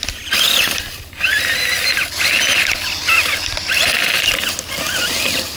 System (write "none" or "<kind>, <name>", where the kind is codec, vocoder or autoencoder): none